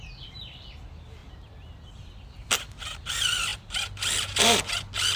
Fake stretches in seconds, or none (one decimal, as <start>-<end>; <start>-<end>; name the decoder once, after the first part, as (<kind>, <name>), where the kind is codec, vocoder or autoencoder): none